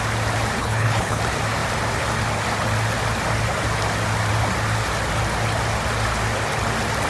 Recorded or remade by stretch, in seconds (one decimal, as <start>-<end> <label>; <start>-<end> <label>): 0.0-0.6 recorded; 0.6-1.2 remade; 1.2-7.1 recorded